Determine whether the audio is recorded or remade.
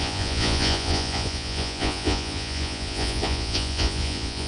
remade